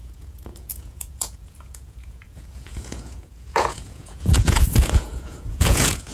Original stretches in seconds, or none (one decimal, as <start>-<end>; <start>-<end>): none